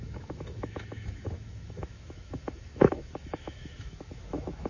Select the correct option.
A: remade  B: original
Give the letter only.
A